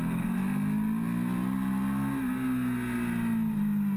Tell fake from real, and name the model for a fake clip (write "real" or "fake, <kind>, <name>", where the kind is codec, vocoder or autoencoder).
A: real